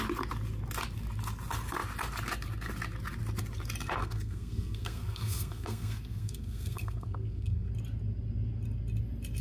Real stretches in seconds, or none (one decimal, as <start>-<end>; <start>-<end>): 0.0-4.0; 7.7-9.4